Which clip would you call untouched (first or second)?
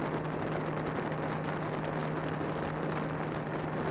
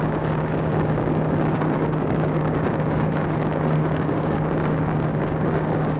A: first